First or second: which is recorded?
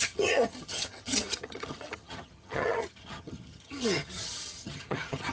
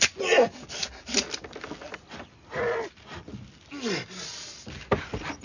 second